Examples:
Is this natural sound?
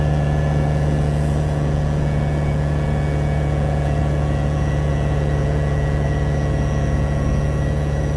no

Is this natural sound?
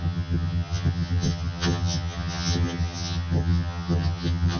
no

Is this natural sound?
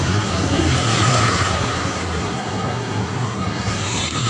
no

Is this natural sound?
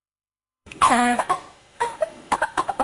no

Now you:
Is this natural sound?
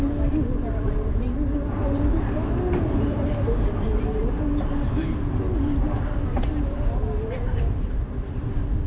yes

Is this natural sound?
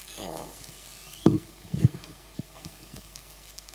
no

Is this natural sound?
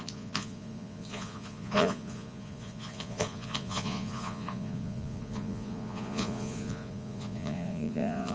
no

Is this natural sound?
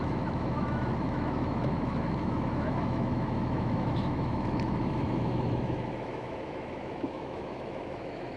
no